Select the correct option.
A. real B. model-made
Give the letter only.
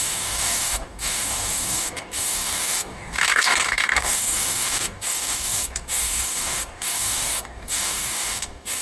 B